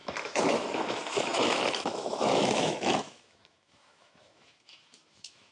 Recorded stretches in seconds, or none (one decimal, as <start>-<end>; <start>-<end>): none